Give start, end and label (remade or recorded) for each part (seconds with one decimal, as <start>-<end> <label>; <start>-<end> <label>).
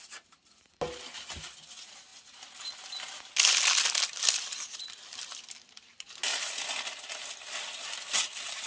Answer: 0.0-8.7 recorded